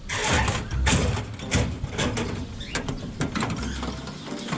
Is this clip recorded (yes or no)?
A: yes